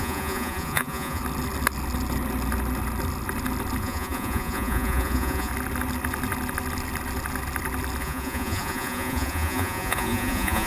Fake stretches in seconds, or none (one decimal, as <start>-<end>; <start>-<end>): 0.0-1.2; 3.8-5.5; 8.0-10.7